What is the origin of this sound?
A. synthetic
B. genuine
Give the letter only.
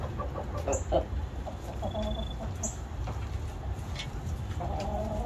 B